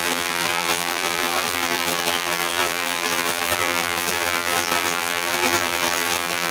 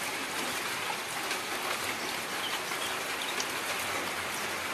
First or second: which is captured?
second